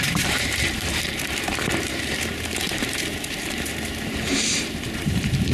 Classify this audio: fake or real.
fake